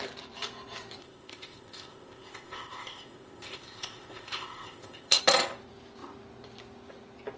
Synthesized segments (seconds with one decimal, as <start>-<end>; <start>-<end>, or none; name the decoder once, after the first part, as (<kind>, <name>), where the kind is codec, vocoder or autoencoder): 1.0-5.2 (codec, ZipCodec)

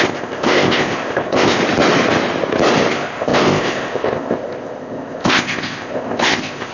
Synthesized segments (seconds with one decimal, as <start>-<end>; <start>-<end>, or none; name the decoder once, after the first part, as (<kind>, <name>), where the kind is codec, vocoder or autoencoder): 0.0-1.6 (codec, ZipCodec); 2.9-6.7

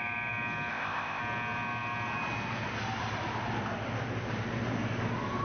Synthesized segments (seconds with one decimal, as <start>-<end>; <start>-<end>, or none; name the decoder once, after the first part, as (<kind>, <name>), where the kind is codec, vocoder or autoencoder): 0.7-1.2 (codec, ZipCodec)

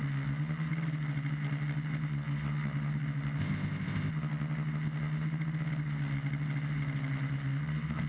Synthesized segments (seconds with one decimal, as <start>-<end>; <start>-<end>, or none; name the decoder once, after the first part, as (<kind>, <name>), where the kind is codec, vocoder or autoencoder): 3.4-4.1 (codec, ZipCodec)